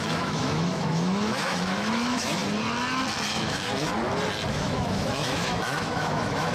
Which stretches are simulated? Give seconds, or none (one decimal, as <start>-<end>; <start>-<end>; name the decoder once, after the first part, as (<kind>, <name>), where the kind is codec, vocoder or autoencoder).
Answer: 0.0-2.4 (autoencoder, DAC-VAE); 3.3-3.9; 4.5-6.5